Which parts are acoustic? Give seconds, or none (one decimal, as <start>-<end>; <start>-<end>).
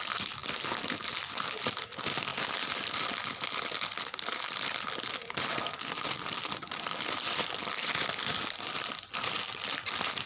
0.0-10.3